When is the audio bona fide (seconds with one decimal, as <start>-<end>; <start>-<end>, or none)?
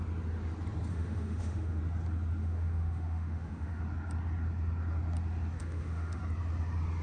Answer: 0.0-0.9; 1.8-2.4; 3.8-5.6; 6.2-7.0